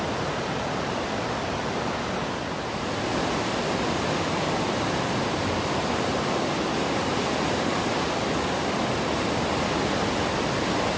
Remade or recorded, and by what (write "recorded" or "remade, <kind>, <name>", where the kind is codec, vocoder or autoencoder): recorded